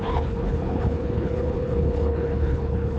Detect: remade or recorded remade